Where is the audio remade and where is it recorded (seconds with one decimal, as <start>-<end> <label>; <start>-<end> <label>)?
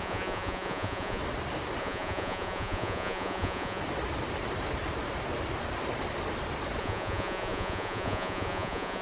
0.0-1.2 remade; 1.2-1.8 recorded; 1.8-3.8 remade; 3.8-6.8 recorded; 6.8-9.0 remade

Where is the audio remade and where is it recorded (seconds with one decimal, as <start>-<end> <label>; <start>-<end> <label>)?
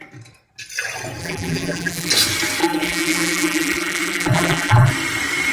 0.0-1.2 recorded; 1.2-2.1 remade; 2.1-2.6 recorded; 2.6-4.9 remade; 4.9-5.5 recorded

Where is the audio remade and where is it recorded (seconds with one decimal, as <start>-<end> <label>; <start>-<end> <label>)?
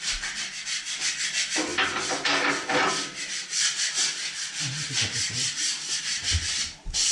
0.0-7.1 recorded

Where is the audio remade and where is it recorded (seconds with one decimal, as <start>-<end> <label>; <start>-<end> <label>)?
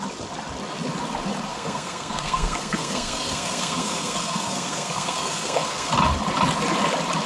0.0-1.5 recorded; 1.5-5.9 remade; 5.9-7.3 recorded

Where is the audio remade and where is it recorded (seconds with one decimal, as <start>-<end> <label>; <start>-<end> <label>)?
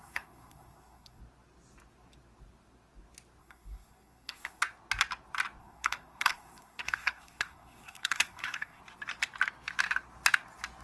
0.0-1.2 remade; 1.2-3.4 recorded; 3.4-4.6 remade; 4.6-5.6 recorded; 5.6-8.8 remade; 8.8-10.8 recorded